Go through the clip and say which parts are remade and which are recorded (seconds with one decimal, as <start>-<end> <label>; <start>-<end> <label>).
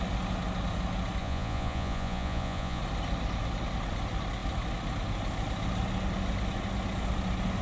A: 0.0-1.2 recorded; 1.2-2.8 remade; 2.8-7.6 recorded